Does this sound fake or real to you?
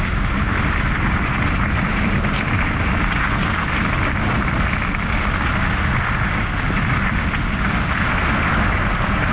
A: real